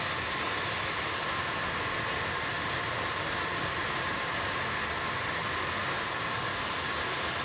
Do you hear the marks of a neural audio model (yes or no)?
no